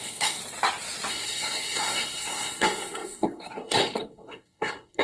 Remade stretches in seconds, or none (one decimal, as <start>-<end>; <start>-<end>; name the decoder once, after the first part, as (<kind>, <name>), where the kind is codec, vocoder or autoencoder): 0.0-0.4 (codec, SNAC); 1.1-5.0